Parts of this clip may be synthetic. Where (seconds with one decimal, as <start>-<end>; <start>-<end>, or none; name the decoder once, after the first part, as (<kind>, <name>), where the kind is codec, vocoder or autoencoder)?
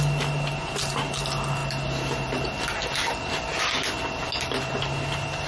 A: none